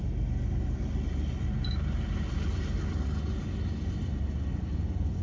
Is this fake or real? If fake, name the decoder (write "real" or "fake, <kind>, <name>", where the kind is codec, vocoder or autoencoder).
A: real